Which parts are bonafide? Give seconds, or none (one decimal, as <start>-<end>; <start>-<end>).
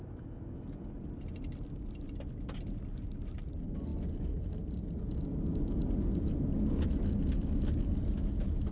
0.0-8.7